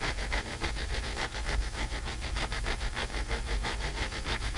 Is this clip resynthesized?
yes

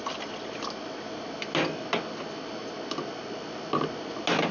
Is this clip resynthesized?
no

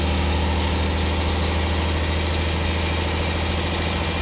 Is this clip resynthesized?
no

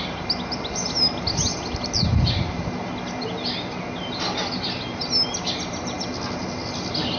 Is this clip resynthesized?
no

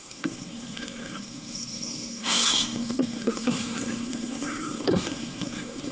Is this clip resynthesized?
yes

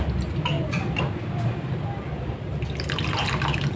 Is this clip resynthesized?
no